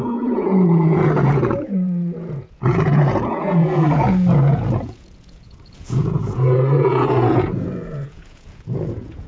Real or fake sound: fake